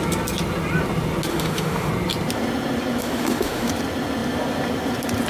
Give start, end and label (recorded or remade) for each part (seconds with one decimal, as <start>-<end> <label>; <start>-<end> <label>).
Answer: 0.0-1.3 recorded; 1.3-1.9 remade; 1.9-3.0 recorded; 3.0-3.7 remade; 3.7-5.3 recorded